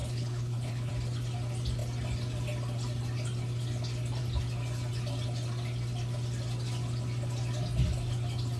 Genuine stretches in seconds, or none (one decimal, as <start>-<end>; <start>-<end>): 0.9-8.6